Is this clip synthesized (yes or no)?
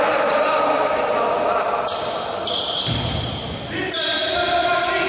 no